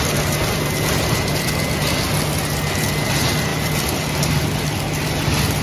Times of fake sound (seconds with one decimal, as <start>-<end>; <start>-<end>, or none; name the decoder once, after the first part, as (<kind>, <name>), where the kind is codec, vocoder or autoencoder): 3.5-4.3 (vocoder, BigVGAN v2)